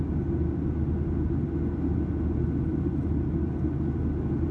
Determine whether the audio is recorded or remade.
recorded